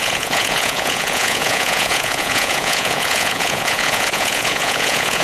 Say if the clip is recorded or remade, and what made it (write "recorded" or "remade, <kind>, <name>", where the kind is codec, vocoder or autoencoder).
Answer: remade, vocoder, Vocos